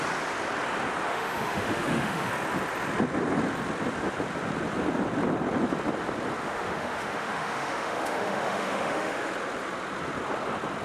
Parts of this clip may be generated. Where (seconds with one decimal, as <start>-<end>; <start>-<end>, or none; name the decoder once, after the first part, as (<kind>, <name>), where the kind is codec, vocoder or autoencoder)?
1.1-2.3 (autoencoder, DAC-VAE); 6.4-9.3